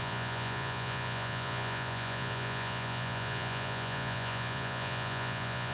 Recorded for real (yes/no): no